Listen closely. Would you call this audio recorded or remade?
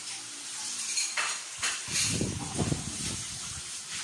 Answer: remade